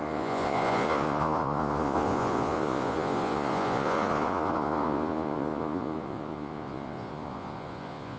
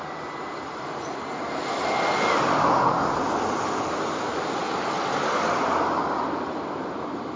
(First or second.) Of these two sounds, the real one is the second